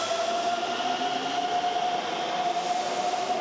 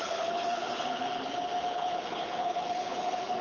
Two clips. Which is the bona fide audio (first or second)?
first